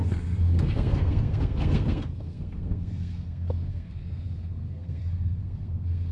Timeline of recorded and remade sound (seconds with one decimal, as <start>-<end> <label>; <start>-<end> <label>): 0.0-6.1 remade